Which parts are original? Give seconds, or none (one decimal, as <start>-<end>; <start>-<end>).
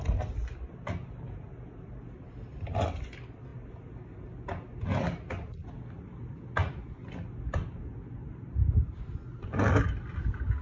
0.0-10.6